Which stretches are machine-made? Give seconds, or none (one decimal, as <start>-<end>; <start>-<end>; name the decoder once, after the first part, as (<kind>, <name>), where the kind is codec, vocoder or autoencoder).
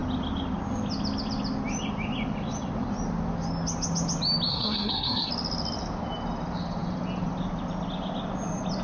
4.5-5.3 (codec, SNAC)